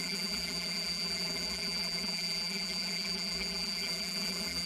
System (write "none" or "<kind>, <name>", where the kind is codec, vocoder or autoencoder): vocoder, BigVGAN v2